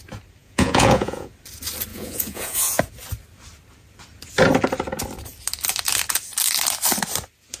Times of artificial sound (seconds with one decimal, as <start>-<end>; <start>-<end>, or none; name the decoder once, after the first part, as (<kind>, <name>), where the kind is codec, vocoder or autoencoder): 0.4-1.3 (vocoder, Vocos); 1.9-2.8